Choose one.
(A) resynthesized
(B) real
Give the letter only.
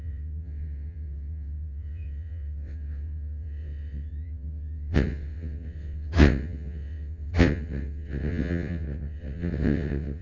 A